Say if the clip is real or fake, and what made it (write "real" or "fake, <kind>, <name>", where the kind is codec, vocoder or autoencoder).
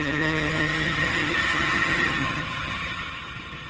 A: fake, vocoder, HiFi-GAN